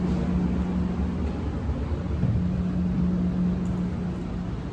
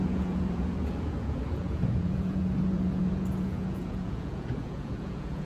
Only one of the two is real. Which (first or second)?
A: first